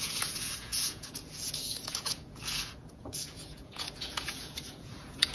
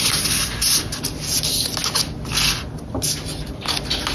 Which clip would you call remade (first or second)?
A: first